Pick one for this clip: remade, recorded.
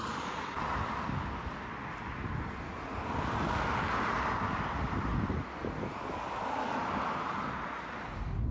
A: recorded